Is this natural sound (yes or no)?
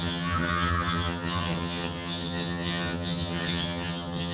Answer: no